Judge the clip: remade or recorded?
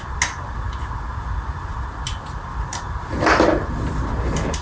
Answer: recorded